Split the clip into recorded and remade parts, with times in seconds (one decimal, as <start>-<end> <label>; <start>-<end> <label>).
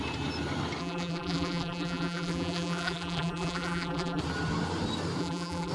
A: 0.0-0.8 recorded; 0.8-4.2 remade; 4.2-5.2 recorded; 5.2-5.7 remade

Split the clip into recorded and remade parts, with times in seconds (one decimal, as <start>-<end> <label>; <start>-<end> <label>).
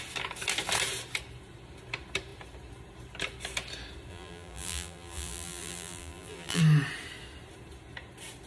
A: 0.0-4.1 recorded; 4.1-6.6 remade; 6.6-8.5 recorded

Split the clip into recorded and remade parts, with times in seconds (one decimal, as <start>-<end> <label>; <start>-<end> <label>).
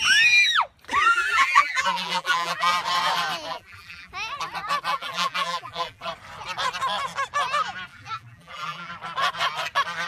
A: 0.0-1.1 recorded; 1.1-2.7 remade; 2.7-3.5 recorded; 3.5-4.1 remade; 4.1-4.9 recorded; 4.9-6.1 remade; 6.1-7.9 recorded; 7.9-8.9 remade; 8.9-10.1 recorded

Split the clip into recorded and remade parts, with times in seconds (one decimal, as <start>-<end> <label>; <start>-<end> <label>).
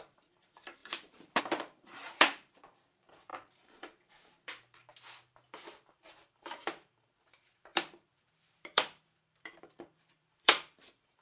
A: 0.0-4.9 remade; 4.9-5.9 recorded; 5.9-11.2 remade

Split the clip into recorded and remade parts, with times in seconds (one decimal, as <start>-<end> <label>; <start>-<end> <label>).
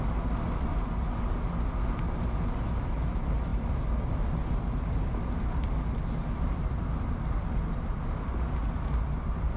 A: 0.0-9.6 recorded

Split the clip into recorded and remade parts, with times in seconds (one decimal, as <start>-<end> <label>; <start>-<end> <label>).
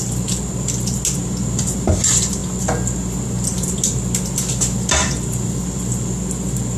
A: 0.0-6.8 recorded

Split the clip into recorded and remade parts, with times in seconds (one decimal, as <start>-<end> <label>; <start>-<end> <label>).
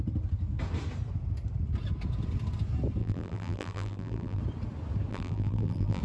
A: 0.0-3.0 recorded; 3.0-4.4 remade; 4.4-5.1 recorded; 5.1-6.0 remade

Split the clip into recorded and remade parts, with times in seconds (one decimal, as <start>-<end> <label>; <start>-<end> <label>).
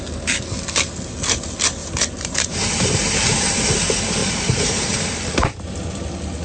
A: 0.0-1.8 recorded; 1.8-3.8 remade; 3.8-4.2 recorded; 4.2-4.8 remade; 4.8-6.4 recorded